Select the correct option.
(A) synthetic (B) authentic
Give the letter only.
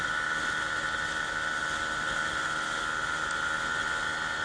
B